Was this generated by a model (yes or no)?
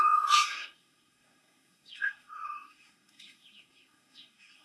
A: yes